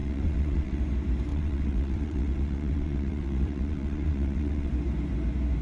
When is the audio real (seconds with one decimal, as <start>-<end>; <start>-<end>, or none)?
0.8-1.3; 4.7-5.6